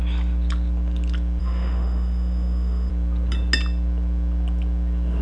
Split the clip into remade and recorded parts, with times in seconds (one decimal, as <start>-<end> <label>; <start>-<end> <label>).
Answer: 0.0-1.4 recorded; 1.4-2.9 remade; 2.9-5.2 recorded